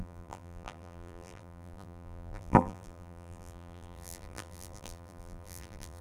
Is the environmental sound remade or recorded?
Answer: remade